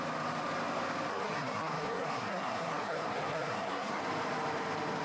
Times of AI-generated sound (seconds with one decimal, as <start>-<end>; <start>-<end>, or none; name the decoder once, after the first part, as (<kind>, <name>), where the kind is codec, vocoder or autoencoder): 1.1-4.0 (codec, SNAC)